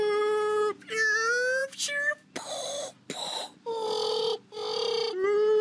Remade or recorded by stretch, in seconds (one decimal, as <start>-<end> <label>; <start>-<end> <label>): 0.0-5.6 recorded